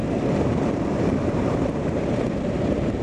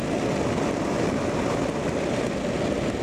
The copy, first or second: first